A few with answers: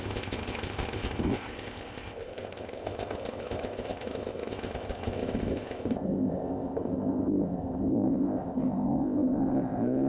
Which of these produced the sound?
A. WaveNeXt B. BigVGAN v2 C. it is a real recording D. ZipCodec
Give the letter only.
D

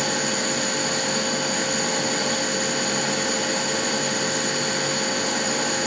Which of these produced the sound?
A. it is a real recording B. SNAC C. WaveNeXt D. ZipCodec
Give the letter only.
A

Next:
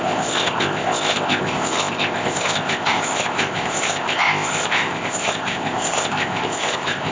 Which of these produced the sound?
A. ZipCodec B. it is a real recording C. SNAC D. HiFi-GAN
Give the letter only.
A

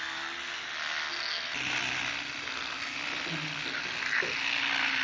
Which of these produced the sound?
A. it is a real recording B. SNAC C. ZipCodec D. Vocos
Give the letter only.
A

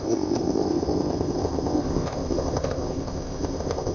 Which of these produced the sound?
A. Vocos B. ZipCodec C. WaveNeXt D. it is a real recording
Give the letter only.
B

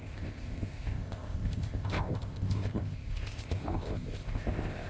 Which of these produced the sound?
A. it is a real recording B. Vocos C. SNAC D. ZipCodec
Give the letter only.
D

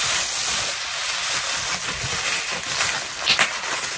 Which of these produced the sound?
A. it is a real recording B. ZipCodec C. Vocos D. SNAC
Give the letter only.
A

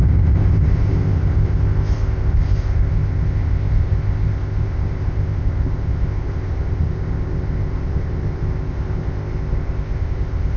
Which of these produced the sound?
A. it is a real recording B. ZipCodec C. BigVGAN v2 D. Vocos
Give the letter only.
B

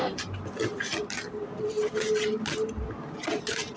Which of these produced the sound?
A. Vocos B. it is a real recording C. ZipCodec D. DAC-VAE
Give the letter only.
B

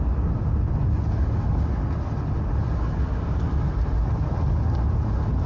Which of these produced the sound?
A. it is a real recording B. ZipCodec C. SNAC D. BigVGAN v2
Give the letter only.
A